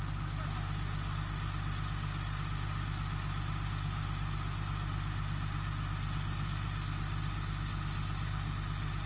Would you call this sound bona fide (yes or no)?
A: yes